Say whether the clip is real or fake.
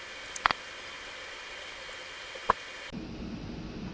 real